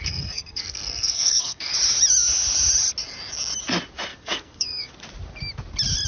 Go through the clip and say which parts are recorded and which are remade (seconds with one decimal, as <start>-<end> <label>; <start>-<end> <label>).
0.0-1.7 remade; 1.7-4.1 recorded; 4.1-4.9 remade; 4.9-6.1 recorded